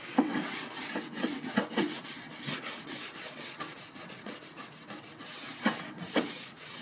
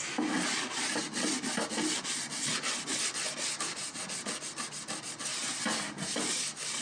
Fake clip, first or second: first